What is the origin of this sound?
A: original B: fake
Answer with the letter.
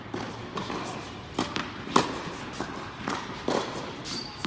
A